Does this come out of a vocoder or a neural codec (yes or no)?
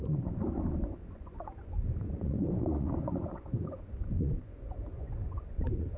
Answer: yes